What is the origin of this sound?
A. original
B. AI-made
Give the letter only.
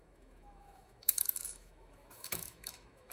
B